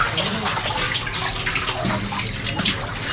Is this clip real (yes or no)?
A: yes